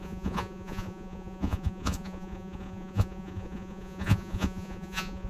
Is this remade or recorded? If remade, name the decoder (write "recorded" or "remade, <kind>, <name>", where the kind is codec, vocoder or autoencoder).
remade, vocoder, Vocos